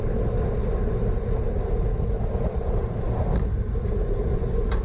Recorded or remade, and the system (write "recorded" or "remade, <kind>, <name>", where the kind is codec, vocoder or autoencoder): recorded